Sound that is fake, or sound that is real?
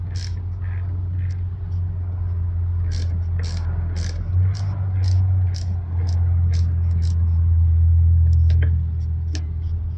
real